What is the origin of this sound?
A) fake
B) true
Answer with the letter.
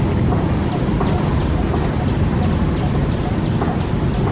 B